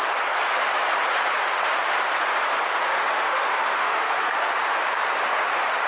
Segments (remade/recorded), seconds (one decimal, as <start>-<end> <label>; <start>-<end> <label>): 0.0-2.9 recorded; 2.9-4.5 remade; 4.5-5.9 recorded